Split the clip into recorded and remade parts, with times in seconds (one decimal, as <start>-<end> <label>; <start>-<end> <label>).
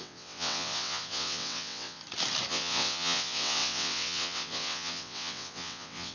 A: 0.0-2.0 remade; 2.0-2.5 recorded; 2.5-6.1 remade